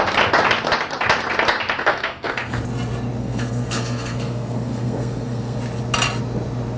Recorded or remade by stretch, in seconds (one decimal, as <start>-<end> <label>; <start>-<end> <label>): 0.0-1.8 recorded; 1.8-2.6 remade; 2.6-3.2 recorded; 3.2-5.6 remade; 5.6-6.8 recorded